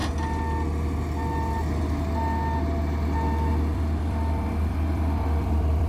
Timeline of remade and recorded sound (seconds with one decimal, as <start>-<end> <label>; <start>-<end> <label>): 0.0-3.5 recorded; 3.5-5.9 remade